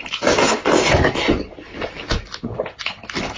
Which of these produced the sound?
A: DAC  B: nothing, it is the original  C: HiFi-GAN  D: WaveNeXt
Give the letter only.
B